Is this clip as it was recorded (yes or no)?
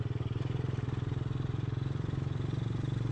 yes